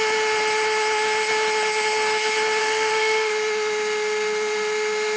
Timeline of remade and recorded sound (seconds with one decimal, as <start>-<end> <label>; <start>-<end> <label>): 0.0-2.6 recorded; 2.6-3.3 remade; 3.3-5.2 recorded

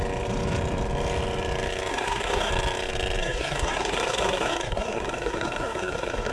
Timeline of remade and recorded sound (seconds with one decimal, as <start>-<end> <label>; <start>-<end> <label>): 0.0-1.9 recorded; 1.9-2.5 remade; 2.5-3.2 recorded; 3.2-6.3 remade

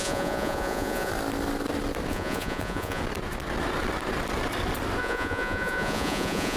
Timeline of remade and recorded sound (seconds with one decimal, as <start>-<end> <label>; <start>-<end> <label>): 0.0-1.1 remade; 1.1-2.1 recorded; 2.1-3.0 remade; 3.0-5.0 recorded; 5.0-6.6 remade